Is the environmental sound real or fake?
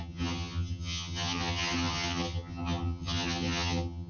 fake